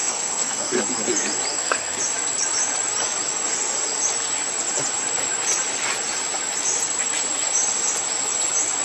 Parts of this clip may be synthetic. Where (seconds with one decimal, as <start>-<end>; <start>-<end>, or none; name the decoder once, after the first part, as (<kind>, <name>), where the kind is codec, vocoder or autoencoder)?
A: 0.0-0.8 (codec, SNAC); 1.5-2.0